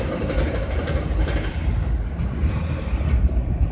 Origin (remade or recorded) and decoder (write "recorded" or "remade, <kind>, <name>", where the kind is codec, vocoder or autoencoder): remade, vocoder, BigVGAN v2